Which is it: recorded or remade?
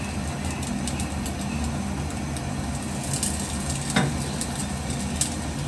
recorded